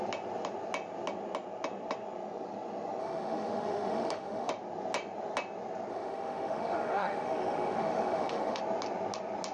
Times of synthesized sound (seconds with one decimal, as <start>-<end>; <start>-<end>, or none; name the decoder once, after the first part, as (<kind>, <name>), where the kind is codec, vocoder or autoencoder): 3.0-4.5 (autoencoder, DAC-VAE); 5.9-8.6